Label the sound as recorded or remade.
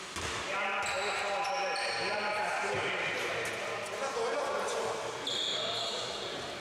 recorded